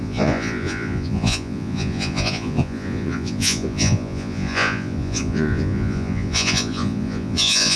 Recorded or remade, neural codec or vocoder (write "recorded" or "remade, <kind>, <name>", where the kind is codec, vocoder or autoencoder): remade, vocoder, Vocos